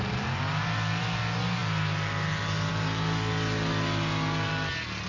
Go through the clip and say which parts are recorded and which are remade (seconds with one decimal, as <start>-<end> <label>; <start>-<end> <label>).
0.0-5.1 recorded